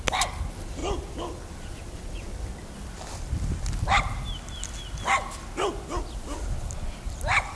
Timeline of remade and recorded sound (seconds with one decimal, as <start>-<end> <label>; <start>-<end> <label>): 0.0-7.6 recorded